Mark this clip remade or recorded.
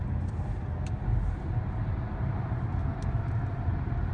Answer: recorded